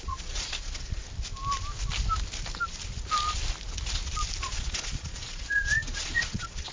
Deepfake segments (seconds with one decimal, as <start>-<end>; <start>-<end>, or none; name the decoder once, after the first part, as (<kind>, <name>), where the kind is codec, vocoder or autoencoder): 0.0-1.0 (vocoder, Vocos); 4.4-6.7